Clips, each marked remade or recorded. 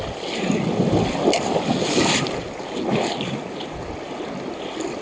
recorded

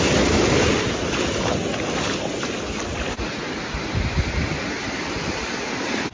recorded